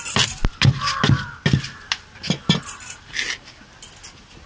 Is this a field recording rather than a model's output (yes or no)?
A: yes